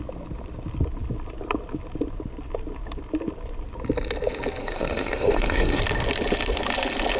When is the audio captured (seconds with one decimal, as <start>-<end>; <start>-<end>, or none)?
0.0-4.6; 5.8-7.2